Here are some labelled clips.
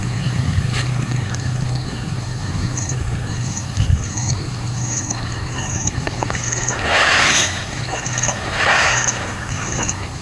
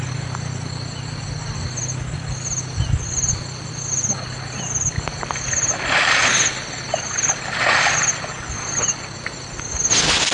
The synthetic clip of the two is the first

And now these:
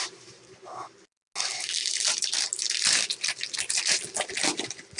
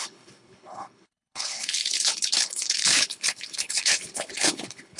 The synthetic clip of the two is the second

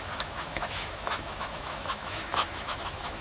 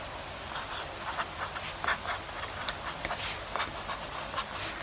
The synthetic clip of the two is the first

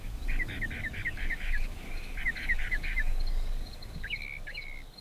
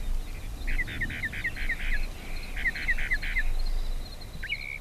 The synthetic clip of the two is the first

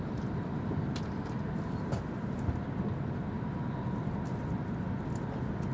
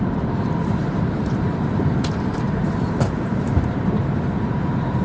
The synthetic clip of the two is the second